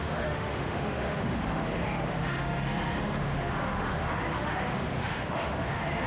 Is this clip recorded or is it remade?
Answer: remade